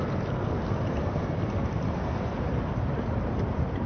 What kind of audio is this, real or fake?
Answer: fake